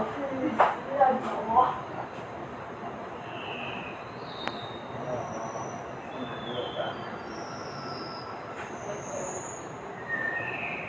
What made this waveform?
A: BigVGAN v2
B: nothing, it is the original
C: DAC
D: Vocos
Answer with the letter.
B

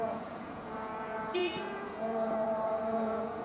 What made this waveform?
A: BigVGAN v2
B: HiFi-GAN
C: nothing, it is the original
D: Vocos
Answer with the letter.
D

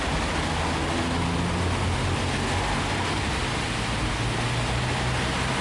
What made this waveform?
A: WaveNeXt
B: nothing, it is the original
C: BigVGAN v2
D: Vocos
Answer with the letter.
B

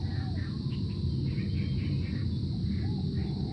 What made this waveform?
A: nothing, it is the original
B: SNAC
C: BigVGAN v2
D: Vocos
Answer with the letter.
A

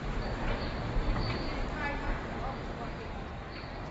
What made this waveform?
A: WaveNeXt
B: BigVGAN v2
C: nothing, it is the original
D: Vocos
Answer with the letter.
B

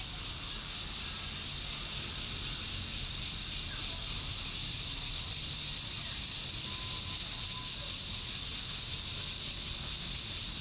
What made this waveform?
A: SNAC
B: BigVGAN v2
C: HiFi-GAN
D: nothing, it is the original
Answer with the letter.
D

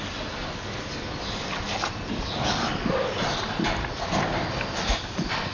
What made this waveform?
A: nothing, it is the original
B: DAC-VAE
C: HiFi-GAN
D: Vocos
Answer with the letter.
A